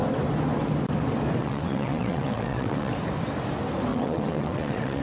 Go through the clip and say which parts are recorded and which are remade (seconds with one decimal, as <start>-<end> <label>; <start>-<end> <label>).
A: 0.0-1.4 recorded; 1.4-2.9 remade; 2.9-3.9 recorded; 3.9-5.0 remade